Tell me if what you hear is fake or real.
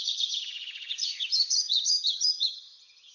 fake